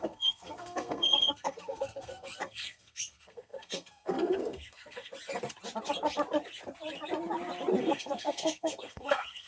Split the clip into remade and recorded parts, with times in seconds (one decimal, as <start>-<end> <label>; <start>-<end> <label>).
0.0-5.1 remade; 5.1-7.8 recorded; 7.8-9.5 remade